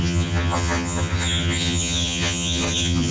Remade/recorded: remade